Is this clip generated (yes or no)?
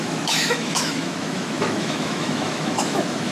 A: yes